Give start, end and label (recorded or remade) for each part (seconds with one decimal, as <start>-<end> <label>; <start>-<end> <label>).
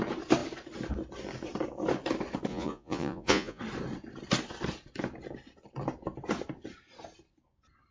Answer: 0.0-2.5 recorded; 2.5-3.6 remade; 3.6-7.9 recorded